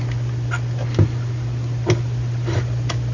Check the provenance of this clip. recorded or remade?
recorded